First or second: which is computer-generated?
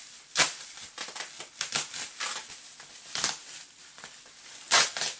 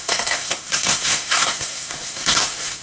second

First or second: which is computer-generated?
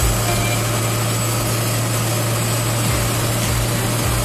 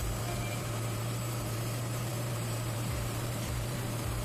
second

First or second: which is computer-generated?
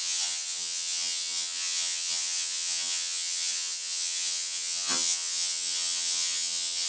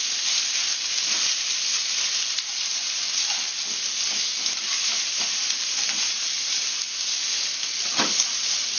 first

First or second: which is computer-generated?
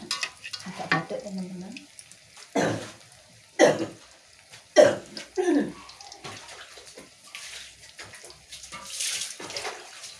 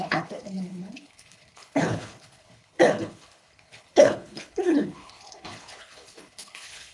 second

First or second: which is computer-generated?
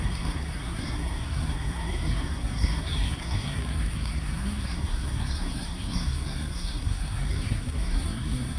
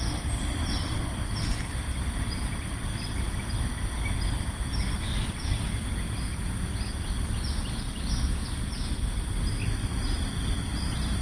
first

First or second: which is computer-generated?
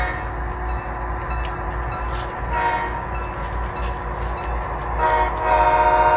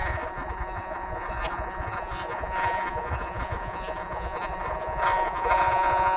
second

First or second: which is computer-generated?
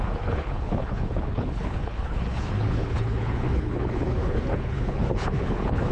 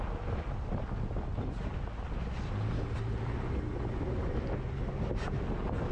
first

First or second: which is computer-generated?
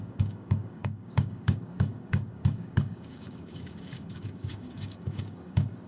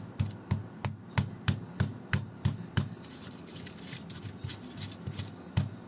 first